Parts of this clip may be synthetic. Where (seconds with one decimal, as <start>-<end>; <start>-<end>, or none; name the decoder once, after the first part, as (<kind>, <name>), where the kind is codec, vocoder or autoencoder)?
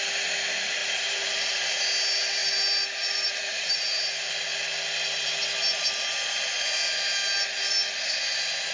0.8-1.8 (vocoder, BigVGAN v2); 2.4-4.3